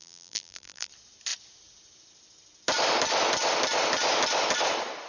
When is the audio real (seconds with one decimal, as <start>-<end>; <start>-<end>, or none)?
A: 0.9-5.1